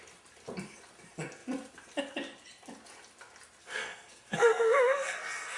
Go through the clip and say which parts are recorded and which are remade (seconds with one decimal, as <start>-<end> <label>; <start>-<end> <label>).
0.0-3.6 recorded; 3.6-5.6 remade